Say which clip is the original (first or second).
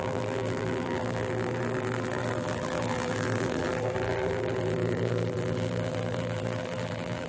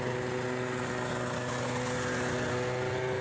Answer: second